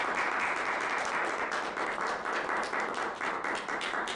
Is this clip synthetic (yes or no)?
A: no